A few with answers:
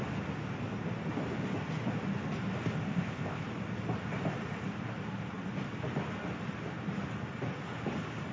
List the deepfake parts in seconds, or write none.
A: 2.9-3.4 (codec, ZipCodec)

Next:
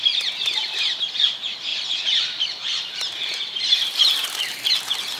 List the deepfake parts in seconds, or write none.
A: 1.7-4.8 (vocoder, BigVGAN v2)

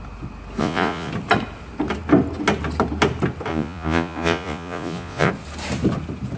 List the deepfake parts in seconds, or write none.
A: 0.6-1.1 (vocoder, Vocos); 3.5-5.3

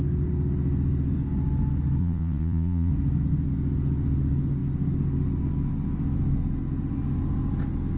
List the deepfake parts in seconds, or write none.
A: 2.0-2.9 (vocoder, Vocos)

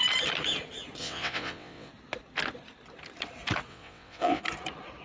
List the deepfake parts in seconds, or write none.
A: 1.0-1.9 (vocoder, WaveNeXt); 3.7-4.4

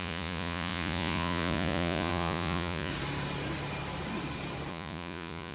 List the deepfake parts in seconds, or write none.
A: 0.0-2.9 (vocoder, Vocos); 4.7-5.5